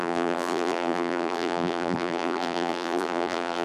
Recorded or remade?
remade